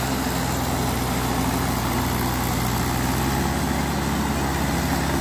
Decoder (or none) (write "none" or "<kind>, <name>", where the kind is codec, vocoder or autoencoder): none